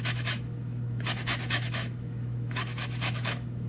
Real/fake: fake